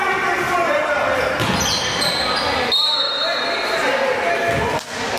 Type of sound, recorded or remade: recorded